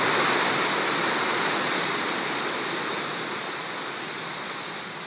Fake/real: real